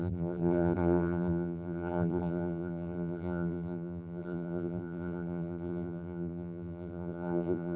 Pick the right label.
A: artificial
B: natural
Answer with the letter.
A